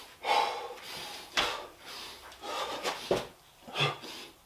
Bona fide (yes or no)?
yes